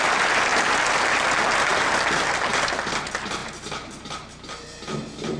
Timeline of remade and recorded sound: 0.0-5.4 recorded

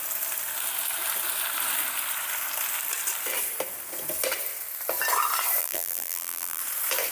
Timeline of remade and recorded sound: 0.0-5.6 recorded; 5.6-6.6 remade; 6.6-7.1 recorded

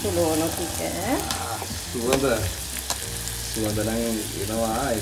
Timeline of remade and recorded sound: 0.0-5.0 recorded

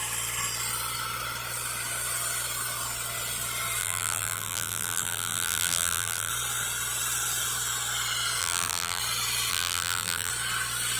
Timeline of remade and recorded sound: 0.0-3.8 recorded; 3.8-6.3 remade; 6.3-8.4 recorded; 8.4-9.0 remade; 9.0-9.5 recorded; 9.5-10.3 remade; 10.3-11.0 recorded

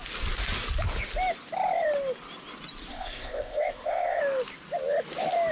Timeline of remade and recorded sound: 0.0-2.9 recorded; 2.9-4.2 remade; 4.2-5.5 recorded

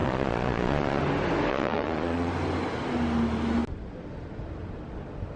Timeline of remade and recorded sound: 0.0-1.0 remade; 1.0-1.5 recorded; 1.5-2.3 remade; 2.3-5.4 recorded